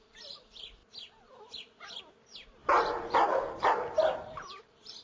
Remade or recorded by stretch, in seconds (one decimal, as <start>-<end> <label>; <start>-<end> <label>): 0.0-0.8 remade; 0.8-2.0 recorded; 2.0-5.0 remade